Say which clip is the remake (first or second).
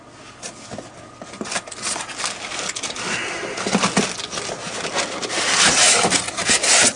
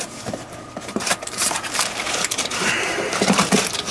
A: second